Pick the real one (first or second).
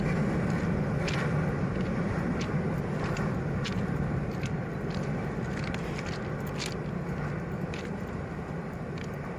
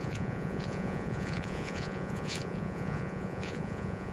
first